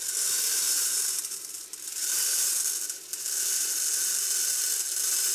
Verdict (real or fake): real